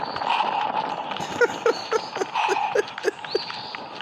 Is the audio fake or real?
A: real